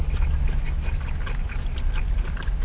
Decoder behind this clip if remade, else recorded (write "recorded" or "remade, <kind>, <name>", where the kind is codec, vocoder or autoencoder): recorded